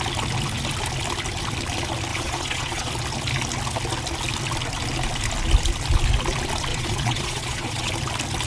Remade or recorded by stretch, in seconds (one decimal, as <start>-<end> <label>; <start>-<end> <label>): 0.0-2.1 recorded; 2.1-2.9 remade; 2.9-6.7 recorded; 6.7-7.9 remade; 7.9-8.5 recorded